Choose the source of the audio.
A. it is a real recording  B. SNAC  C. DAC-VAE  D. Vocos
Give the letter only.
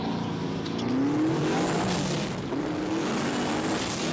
A